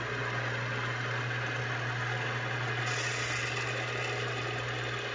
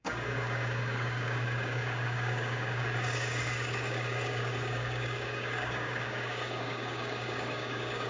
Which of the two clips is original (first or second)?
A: first